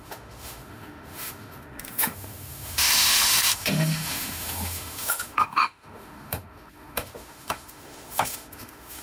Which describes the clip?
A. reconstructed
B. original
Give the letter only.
A